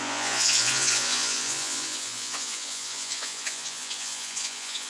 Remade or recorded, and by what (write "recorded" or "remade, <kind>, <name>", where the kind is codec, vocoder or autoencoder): remade, vocoder, Vocos